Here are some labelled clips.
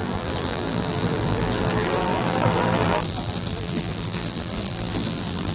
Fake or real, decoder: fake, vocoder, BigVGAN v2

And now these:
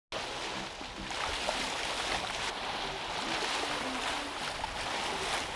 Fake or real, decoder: real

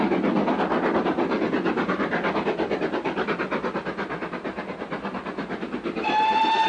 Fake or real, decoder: real